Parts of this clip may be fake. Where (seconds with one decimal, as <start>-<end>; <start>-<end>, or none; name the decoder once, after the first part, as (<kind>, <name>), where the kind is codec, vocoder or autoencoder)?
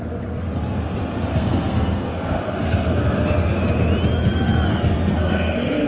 1.3-3.6 (codec, SNAC); 4.7-5.9